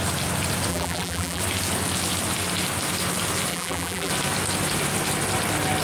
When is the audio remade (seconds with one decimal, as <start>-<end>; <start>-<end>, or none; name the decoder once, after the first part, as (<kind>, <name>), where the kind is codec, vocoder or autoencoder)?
0.7-1.4 (vocoder, BigVGAN v2); 3.5-4.1